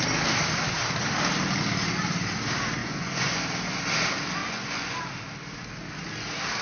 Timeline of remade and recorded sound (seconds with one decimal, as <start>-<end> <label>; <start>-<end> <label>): 0.0-2.8 recorded; 2.8-3.4 remade; 3.4-4.4 recorded; 4.4-4.9 remade; 4.9-6.6 recorded